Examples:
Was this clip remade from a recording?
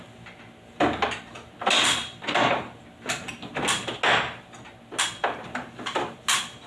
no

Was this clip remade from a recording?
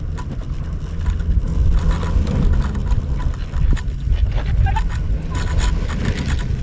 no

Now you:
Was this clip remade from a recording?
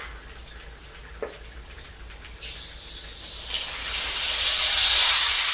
no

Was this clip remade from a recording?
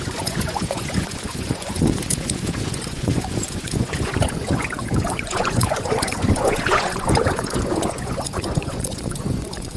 yes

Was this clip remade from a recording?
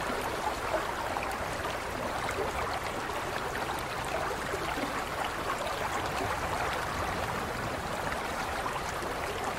no